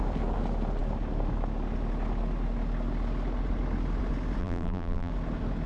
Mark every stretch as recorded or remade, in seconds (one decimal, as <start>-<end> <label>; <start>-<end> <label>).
0.0-4.4 recorded; 4.4-5.1 remade; 5.1-5.7 recorded